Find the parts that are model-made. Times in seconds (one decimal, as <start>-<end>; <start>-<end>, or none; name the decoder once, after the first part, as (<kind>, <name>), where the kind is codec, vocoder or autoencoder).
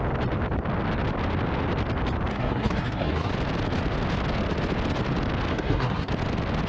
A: 2.3-3.3 (codec, SNAC); 5.5-6.1